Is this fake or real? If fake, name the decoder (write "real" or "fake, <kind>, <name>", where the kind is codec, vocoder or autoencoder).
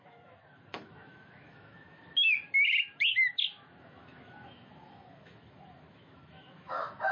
fake, autoencoder, DAC-VAE